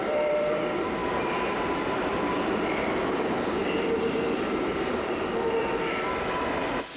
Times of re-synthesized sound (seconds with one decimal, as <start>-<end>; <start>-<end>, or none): 0.0-7.0